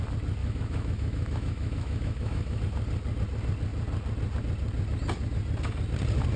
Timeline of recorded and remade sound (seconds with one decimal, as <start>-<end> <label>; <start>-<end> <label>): 0.0-0.4 recorded; 0.4-2.6 remade; 2.6-6.4 recorded